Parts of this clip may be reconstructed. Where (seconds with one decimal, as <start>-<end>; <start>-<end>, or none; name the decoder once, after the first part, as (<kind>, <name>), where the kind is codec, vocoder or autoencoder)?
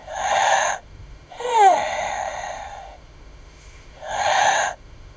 0.0-5.2 (autoencoder, DAC-VAE)